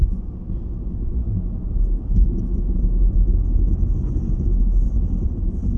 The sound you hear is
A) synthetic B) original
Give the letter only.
B